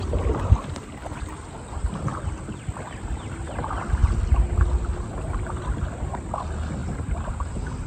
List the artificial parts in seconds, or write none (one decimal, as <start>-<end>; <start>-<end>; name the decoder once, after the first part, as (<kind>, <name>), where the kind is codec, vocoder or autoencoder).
none